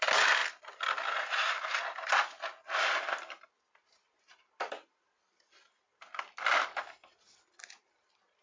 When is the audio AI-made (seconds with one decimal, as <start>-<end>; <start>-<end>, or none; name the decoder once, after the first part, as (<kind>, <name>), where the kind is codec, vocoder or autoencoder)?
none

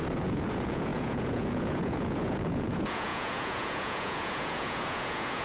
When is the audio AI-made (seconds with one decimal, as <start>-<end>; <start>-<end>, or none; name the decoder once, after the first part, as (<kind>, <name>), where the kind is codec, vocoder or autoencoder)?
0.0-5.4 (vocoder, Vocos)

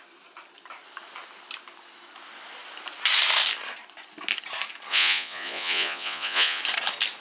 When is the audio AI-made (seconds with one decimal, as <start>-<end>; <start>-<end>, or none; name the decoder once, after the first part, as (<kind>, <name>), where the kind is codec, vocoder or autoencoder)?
4.9-6.6 (vocoder, Vocos)